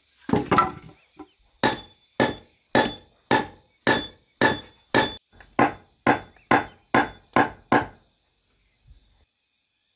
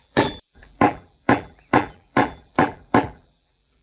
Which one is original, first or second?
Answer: first